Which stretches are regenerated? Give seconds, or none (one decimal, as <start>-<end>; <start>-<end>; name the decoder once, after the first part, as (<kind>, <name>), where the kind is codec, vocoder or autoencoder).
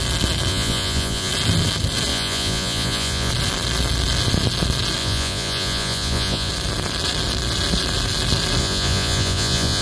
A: 0.5-1.3 (vocoder, Vocos); 2.1-3.3; 5.0-6.5; 8.6-9.8